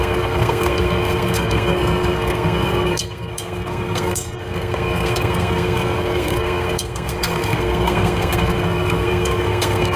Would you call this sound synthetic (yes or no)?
yes